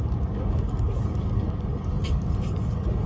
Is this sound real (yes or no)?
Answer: no